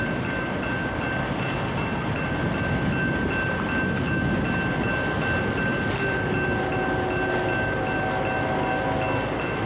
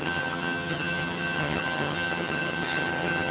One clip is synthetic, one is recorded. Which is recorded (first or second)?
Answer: first